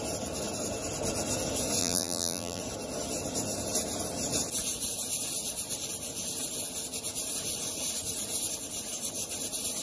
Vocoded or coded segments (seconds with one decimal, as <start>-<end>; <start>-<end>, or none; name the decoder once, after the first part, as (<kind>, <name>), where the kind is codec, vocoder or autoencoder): 1.8-2.6 (vocoder, BigVGAN v2)